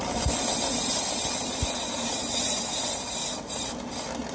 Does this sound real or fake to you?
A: real